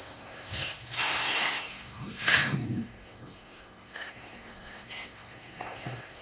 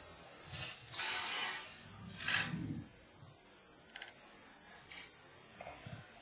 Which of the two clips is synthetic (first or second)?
first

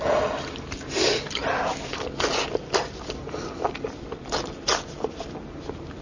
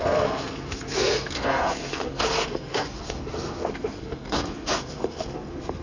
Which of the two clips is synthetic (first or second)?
second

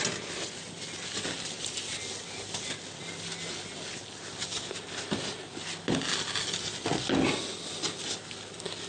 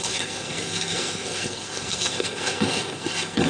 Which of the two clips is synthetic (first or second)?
second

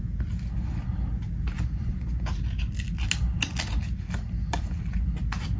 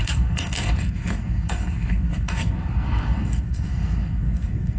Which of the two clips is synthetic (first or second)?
second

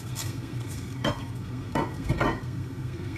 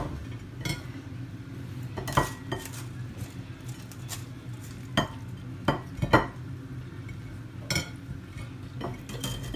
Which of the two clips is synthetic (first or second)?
first